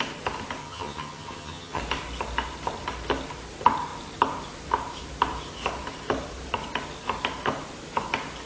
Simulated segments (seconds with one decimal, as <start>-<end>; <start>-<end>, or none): 0.6-1.8